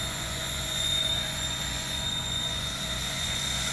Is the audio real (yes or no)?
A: no